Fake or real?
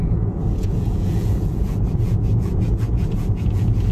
fake